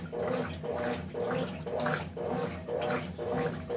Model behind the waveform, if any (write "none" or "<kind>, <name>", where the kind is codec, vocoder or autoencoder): none